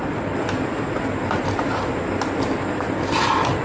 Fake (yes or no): no